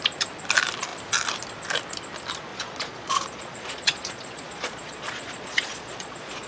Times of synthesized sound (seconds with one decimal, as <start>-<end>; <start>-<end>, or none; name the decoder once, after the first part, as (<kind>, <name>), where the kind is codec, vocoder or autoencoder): 2.5-6.5 (vocoder, Vocos)